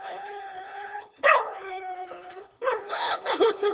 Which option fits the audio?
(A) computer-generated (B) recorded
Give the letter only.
A